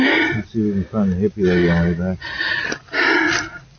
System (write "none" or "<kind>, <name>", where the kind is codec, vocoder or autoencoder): none